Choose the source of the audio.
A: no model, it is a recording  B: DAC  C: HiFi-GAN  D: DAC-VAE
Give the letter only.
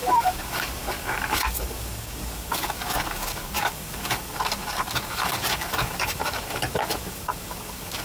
B